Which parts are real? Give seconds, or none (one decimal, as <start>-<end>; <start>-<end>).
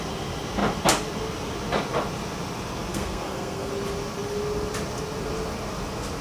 0.0-2.9; 3.7-6.2